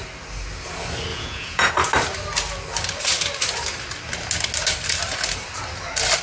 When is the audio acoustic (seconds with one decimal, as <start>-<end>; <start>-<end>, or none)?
0.0-1.1; 1.7-6.2